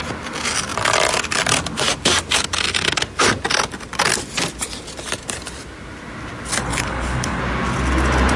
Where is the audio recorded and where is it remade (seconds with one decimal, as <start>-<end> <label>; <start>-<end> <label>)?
0.0-6.7 recorded; 6.7-7.4 remade; 7.4-8.4 recorded